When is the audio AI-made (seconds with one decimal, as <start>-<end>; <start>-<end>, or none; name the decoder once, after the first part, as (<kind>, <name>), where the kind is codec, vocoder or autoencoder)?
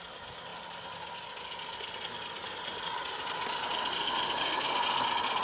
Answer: none